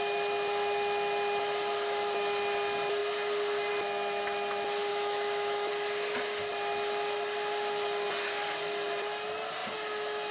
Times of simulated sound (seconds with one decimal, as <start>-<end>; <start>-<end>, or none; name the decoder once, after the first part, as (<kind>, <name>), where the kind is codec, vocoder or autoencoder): 4.9-5.7 (autoencoder, DAC-VAE)